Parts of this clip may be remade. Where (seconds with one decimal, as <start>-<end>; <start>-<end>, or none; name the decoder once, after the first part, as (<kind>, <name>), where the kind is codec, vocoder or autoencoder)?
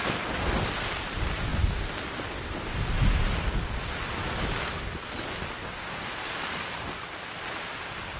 none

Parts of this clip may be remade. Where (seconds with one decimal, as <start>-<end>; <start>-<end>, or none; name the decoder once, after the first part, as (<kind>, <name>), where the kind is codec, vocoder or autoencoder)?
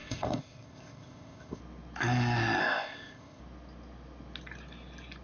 0.0-1.6 (codec, ZipCodec); 2.6-3.4